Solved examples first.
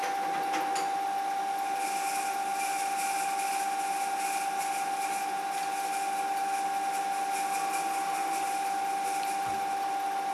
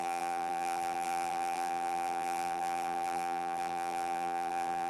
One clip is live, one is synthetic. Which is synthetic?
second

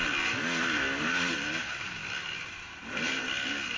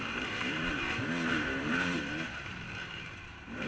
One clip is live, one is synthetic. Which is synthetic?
second